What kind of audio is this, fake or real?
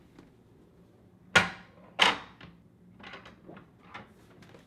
real